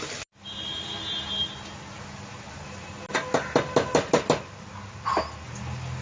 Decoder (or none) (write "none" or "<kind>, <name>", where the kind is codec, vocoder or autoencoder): none